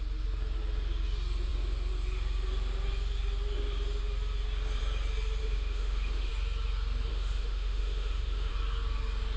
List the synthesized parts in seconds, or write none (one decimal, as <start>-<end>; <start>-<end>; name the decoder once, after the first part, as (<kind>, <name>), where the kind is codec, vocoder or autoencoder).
5.4-6.3 (autoencoder, DAC-VAE); 7.1-8.5